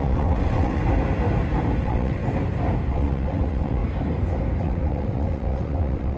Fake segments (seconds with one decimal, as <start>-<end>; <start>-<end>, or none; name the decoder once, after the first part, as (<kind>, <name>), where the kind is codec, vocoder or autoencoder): 0.0-0.8 (vocoder, WaveNeXt); 1.8-2.2; 2.9-3.8; 4.6-6.2